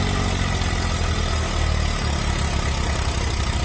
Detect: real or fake real